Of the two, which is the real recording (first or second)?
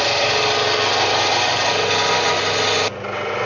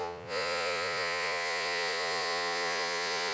first